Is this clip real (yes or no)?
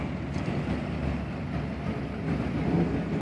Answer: yes